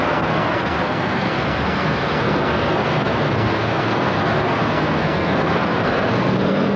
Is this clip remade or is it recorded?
remade